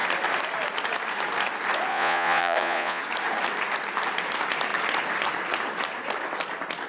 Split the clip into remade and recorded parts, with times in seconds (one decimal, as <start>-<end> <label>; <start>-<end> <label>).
0.0-1.9 recorded; 1.9-3.0 remade; 3.0-6.9 recorded